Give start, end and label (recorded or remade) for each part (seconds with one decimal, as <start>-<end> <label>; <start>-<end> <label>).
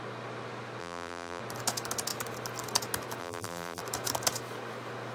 0.0-0.8 recorded; 0.8-1.4 remade; 1.4-3.2 recorded; 3.2-3.8 remade; 3.8-5.1 recorded